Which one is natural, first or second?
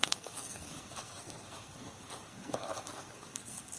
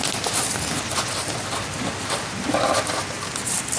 second